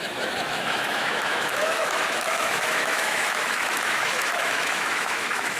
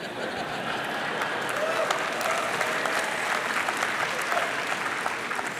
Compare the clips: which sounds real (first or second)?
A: second